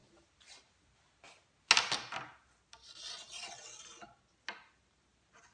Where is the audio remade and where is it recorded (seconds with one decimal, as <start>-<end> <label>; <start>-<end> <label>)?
0.0-5.5 recorded